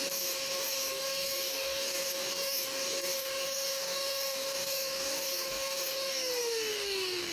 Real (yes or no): no